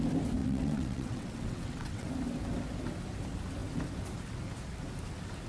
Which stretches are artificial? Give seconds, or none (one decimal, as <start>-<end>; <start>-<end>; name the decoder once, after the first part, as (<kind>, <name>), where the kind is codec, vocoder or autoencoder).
0.4-2.1 (vocoder, WaveNeXt)